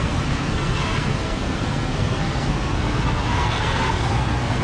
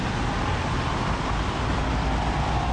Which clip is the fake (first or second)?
first